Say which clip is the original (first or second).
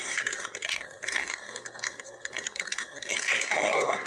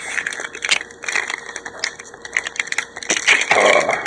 second